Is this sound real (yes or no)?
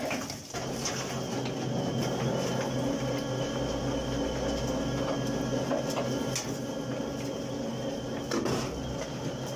yes